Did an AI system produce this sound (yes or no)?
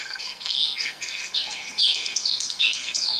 yes